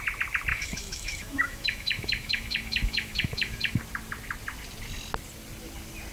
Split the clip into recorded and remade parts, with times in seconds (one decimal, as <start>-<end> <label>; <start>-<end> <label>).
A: 0.0-0.5 recorded; 0.5-3.8 remade; 3.8-6.1 recorded